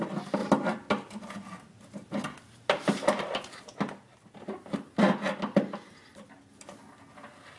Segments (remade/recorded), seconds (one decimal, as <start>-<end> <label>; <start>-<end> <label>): 0.0-7.6 recorded